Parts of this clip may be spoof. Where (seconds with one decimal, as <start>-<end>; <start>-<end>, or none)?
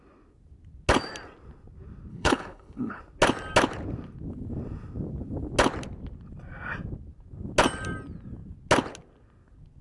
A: 2.1-3.0